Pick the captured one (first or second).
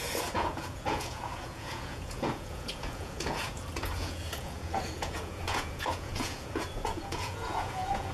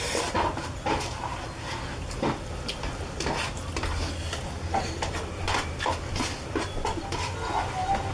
second